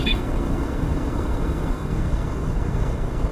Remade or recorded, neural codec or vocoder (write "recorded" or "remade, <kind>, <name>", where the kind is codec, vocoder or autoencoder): remade, codec, SNAC